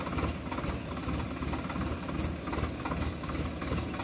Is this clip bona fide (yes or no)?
yes